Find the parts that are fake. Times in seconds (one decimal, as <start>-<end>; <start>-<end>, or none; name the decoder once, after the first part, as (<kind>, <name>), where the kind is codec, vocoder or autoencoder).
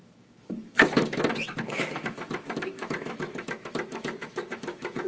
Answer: 0.0-5.1 (autoencoder, DAC-VAE)